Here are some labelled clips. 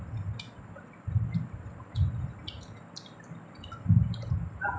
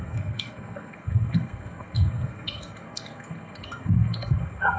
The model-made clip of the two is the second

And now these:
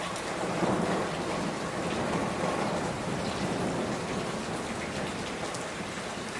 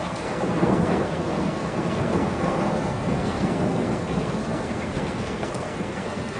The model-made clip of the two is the second